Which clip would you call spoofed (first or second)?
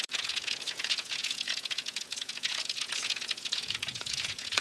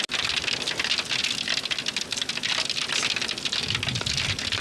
first